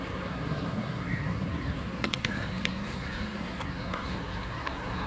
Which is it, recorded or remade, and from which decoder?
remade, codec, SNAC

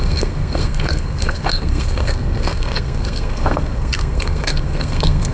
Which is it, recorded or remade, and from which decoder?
remade, codec, SNAC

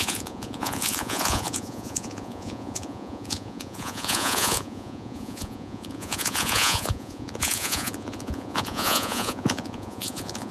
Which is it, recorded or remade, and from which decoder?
remade, vocoder, Vocos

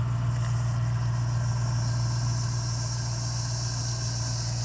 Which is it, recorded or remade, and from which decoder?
recorded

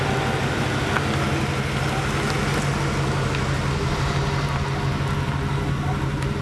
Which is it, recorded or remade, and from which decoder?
recorded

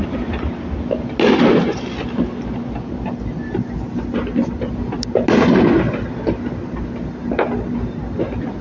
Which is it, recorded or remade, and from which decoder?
recorded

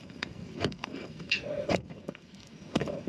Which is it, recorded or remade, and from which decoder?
remade, codec, SNAC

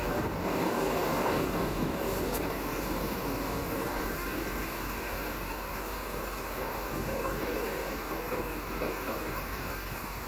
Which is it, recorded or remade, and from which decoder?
remade, codec, DAC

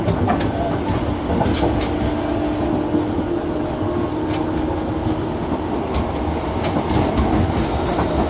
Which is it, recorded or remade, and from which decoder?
recorded